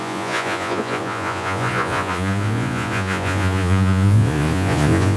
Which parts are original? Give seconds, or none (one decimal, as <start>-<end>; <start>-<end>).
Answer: none

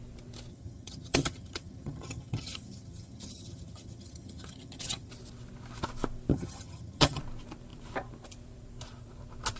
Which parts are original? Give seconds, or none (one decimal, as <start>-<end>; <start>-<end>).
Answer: 0.0-0.5; 5.1-6.3; 7.2-9.6

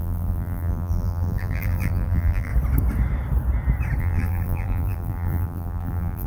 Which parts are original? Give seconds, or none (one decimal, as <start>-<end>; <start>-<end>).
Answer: 2.5-4.0

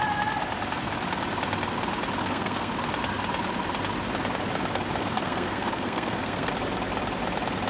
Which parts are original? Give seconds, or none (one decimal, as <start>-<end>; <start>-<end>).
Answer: 0.0-2.2; 2.7-5.0; 6.5-7.7

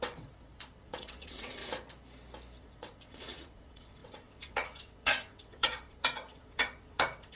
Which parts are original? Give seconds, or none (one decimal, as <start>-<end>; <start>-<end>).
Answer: 1.6-2.6

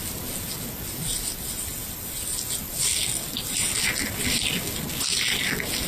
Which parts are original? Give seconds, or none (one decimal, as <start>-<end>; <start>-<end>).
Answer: 0.0-5.9

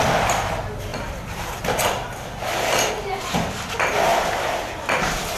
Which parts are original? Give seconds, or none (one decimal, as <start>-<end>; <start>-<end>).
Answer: 0.0-0.9; 2.9-4.1; 4.6-5.4